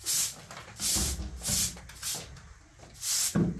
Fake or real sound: real